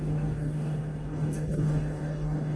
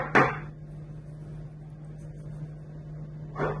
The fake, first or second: first